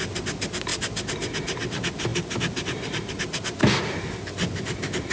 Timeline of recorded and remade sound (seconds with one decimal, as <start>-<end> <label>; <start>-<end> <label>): 0.0-5.1 recorded

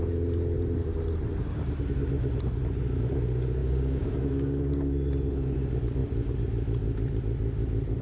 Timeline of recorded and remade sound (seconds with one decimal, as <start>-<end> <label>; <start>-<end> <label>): 0.0-3.6 recorded; 3.6-5.1 remade; 5.1-8.0 recorded

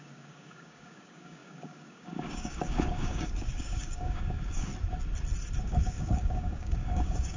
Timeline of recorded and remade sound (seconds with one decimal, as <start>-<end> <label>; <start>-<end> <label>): 0.0-4.7 remade; 4.7-5.6 recorded; 5.6-7.4 remade

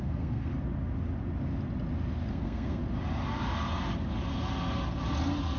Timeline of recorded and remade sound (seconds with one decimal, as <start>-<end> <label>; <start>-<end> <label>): 0.0-0.5 remade; 0.5-2.3 recorded; 2.3-2.8 remade; 2.8-5.6 recorded

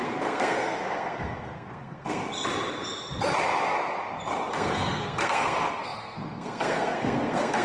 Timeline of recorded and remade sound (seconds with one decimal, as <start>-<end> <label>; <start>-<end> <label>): 0.0-2.2 remade; 2.2-4.5 recorded; 4.5-7.6 remade